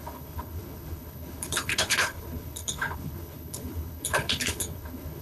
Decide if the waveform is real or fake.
fake